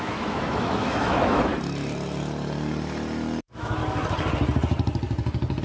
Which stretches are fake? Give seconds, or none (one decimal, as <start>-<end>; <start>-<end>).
0.0-1.5; 3.4-3.8